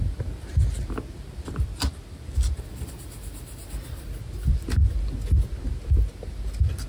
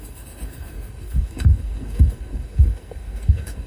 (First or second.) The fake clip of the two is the second